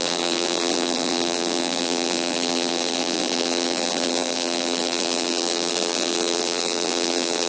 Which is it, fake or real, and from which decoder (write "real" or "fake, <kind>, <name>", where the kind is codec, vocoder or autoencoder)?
fake, vocoder, BigVGAN v2